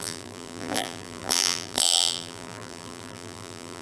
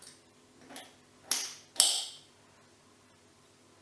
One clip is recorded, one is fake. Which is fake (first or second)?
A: first